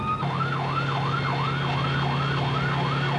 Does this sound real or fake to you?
real